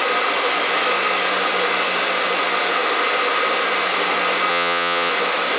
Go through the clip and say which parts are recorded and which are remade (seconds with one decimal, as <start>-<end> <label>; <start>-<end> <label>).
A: 0.0-4.5 recorded; 4.5-5.1 remade; 5.1-5.6 recorded